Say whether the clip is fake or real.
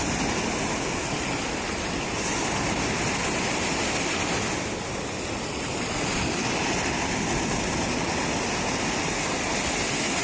real